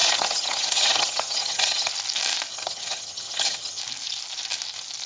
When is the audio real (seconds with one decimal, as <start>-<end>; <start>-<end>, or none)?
1.9-2.5; 3.8-5.1

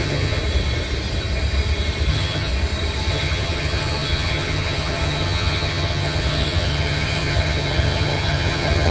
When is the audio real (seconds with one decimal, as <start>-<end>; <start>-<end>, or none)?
0.4-2.1; 2.5-3.1

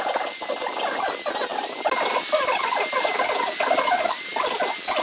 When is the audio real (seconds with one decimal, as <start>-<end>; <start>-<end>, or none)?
0.0-5.0

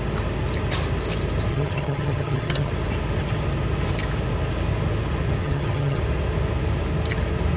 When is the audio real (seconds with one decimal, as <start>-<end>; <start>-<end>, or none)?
0.0-1.5; 2.7-5.4; 6.0-7.6

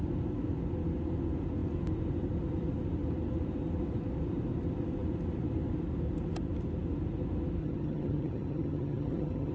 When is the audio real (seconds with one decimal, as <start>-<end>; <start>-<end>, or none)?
0.0-7.6

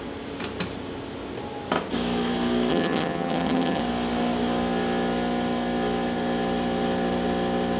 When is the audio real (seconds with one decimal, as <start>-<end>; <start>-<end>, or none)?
0.0-2.7; 3.8-7.8

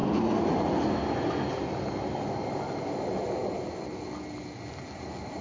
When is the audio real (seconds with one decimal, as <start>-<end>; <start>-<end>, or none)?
0.0-5.4